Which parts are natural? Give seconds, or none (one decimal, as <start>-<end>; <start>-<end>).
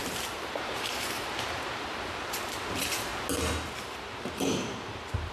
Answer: 3.1-3.7